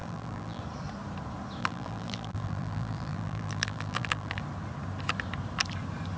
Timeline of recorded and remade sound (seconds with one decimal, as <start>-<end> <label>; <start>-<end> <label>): 0.0-0.6 remade; 0.6-1.6 recorded; 1.6-4.4 remade; 4.4-6.2 recorded

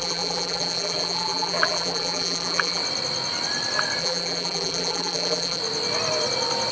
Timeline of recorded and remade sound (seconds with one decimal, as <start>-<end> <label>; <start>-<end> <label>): 0.0-2.8 remade; 2.8-4.0 recorded; 4.0-5.6 remade; 5.6-6.7 recorded

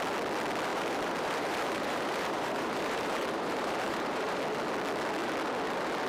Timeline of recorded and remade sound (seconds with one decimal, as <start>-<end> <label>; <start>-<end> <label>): 0.0-0.7 recorded; 0.7-4.4 remade; 4.4-6.1 recorded

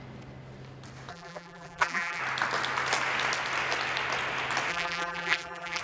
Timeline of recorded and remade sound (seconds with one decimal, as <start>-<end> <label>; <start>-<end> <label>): 0.0-1.1 recorded; 1.1-2.2 remade; 2.2-4.7 recorded; 4.7-5.8 remade

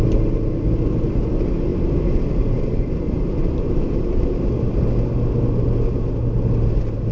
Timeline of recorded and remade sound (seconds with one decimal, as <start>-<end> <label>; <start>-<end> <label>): 0.0-1.7 recorded; 1.7-4.8 remade; 4.8-7.1 recorded

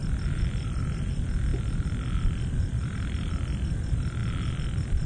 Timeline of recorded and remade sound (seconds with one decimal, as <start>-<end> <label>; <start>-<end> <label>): 0.0-0.8 remade; 0.8-1.5 recorded; 1.5-3.3 remade; 3.3-5.1 recorded